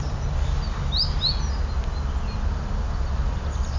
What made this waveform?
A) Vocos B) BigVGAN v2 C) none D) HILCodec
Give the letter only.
C